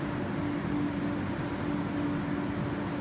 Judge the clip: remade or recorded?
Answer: recorded